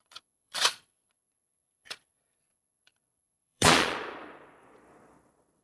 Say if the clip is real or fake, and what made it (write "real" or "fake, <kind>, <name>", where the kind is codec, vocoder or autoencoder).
fake, vocoder, Vocos